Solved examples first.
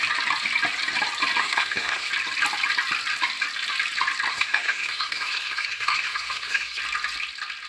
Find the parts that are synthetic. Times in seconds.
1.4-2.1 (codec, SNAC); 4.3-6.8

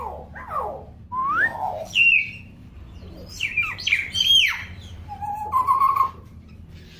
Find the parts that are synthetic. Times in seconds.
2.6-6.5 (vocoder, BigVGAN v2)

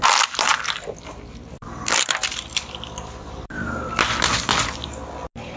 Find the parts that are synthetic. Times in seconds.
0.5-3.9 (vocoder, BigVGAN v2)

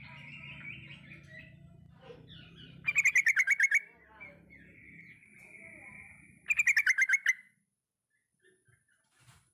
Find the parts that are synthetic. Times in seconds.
none

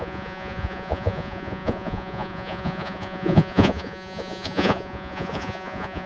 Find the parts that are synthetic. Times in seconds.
0.0-6.1 (vocoder, Vocos)

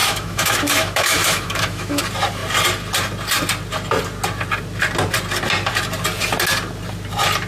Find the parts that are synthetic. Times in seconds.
0.0-2.0 (autoencoder, DAC-VAE)

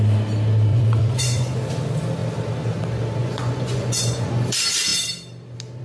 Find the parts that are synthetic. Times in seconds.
0.7-1.6 (vocoder, Vocos); 3.2-4.3